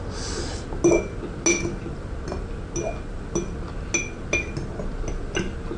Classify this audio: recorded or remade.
recorded